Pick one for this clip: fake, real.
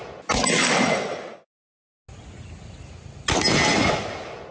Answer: real